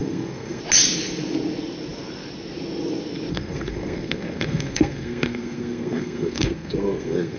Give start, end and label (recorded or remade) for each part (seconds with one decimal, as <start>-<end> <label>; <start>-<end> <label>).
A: 0.0-0.6 remade; 0.6-3.3 recorded; 3.3-7.4 remade